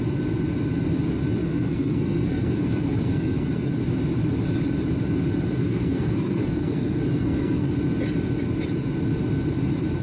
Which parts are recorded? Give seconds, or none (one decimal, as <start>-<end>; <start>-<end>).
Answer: 0.0-1.4; 3.7-5.6; 7.7-10.0